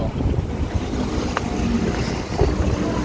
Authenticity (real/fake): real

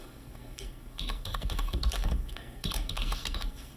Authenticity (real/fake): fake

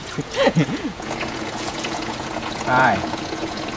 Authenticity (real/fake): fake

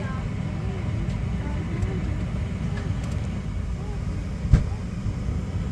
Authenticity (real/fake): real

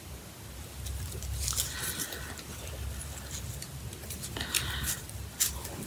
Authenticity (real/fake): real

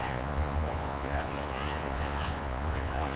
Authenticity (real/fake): fake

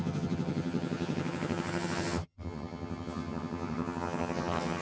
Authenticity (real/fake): fake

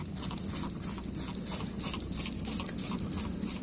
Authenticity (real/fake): real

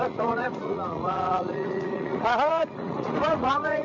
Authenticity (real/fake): fake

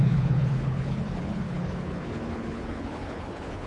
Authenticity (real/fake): fake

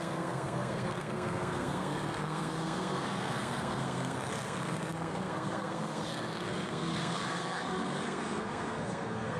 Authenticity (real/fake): fake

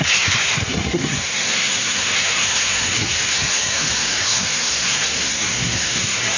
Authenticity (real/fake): fake